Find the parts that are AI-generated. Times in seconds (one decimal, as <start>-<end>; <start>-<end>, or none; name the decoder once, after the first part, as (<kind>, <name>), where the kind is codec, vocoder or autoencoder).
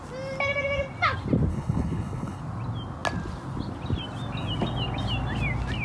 1.5-2.4 (codec, HILCodec)